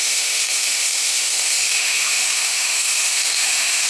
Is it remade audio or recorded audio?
remade